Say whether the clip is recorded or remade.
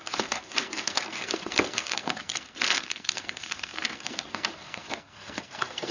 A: remade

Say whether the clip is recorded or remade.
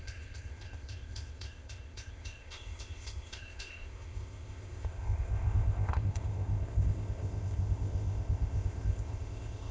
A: remade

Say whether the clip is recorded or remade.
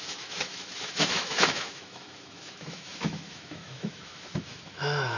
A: remade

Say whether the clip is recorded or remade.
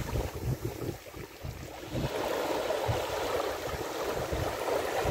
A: recorded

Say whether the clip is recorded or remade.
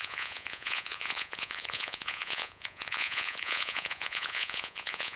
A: remade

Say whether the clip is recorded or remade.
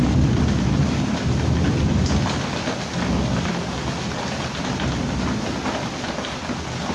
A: recorded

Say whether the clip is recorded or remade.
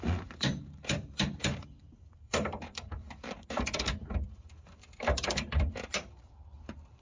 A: remade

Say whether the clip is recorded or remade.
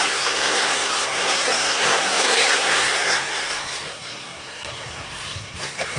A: remade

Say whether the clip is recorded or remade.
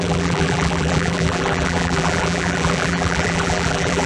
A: remade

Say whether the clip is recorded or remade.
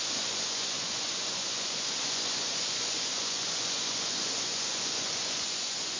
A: remade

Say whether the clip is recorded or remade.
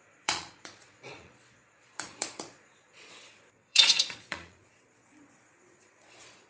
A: remade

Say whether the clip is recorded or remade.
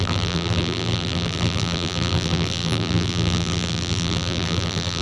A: remade